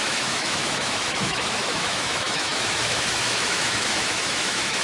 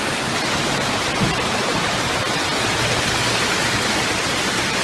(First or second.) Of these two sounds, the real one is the second